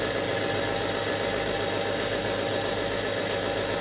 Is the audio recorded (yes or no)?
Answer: yes